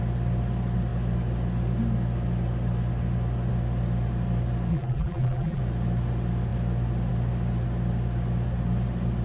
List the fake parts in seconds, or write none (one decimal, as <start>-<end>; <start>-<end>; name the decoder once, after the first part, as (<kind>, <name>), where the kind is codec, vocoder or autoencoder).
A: 4.7-5.6 (vocoder, BigVGAN v2)